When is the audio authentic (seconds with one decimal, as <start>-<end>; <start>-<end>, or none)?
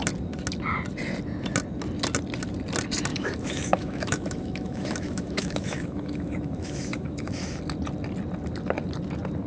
0.0-3.1; 7.6-9.5